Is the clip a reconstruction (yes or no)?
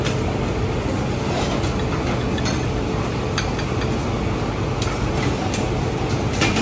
no